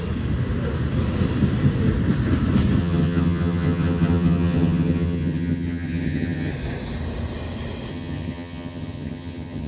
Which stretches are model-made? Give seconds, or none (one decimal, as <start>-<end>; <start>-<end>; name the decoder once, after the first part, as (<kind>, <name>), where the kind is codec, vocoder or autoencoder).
2.8-6.5 (vocoder, HiFi-GAN); 7.9-9.7